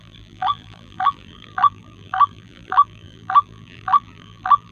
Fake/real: fake